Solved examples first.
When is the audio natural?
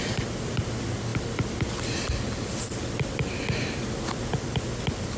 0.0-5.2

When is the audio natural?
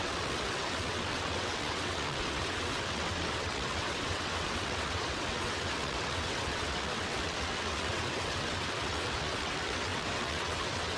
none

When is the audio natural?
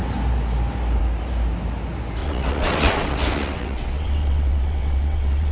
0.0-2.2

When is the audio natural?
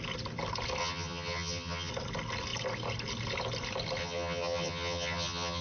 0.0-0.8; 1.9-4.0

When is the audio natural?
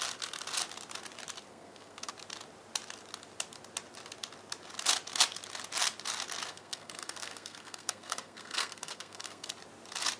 0.0-1.5; 2.1-6.5; 9.5-10.2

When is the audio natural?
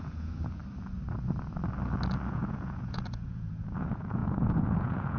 0.6-2.3